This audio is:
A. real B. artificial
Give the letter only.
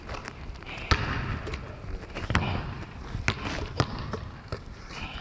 A